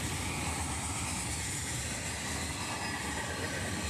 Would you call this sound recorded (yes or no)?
yes